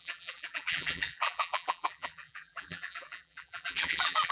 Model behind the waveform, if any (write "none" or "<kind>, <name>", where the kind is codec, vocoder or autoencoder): vocoder, BigVGAN v2